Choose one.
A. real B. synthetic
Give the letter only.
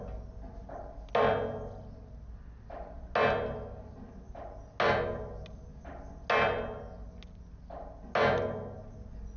A